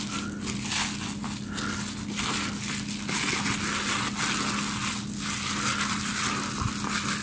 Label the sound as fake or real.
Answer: real